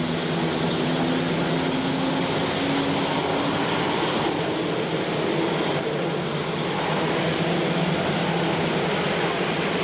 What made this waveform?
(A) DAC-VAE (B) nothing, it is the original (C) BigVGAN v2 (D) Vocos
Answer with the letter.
B